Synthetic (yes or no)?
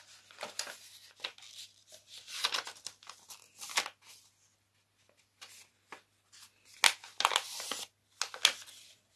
no